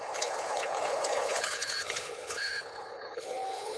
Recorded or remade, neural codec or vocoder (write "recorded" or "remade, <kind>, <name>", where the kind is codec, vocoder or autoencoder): remade, codec, HILCodec